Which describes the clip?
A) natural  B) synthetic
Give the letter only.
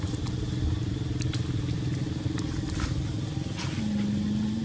A